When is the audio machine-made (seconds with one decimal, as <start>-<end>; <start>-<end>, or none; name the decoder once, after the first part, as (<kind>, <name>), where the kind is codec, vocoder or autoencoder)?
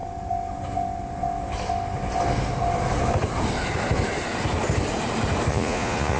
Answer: 5.5-6.2 (vocoder, Vocos)